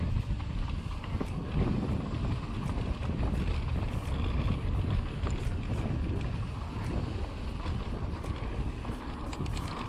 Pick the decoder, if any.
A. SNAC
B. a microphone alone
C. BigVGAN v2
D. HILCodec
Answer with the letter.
B